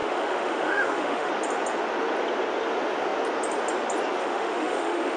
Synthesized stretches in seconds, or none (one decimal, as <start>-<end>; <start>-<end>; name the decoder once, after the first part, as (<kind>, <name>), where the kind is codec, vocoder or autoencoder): 0.0-1.3 (autoencoder, DAC-VAE); 4.2-5.2